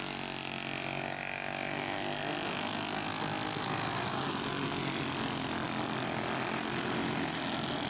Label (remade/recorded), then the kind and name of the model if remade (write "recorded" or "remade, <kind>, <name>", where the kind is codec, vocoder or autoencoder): recorded